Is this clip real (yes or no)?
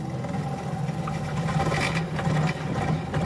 yes